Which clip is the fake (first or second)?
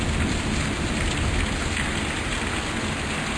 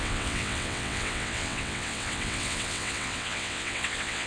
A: second